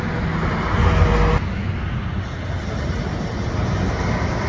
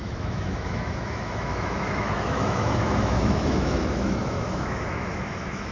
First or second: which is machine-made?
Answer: second